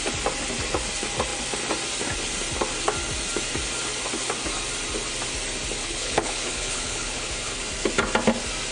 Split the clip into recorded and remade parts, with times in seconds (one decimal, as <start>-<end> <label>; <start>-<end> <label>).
0.0-5.8 recorded; 5.8-7.6 remade; 7.6-8.7 recorded